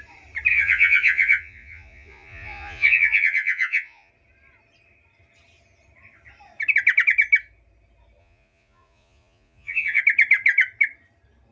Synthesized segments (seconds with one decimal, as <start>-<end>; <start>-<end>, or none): 0.5-4.1; 8.2-10.0